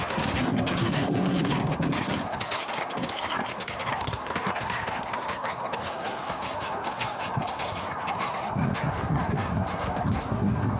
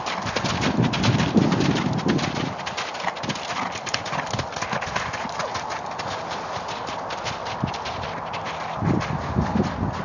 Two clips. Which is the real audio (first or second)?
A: second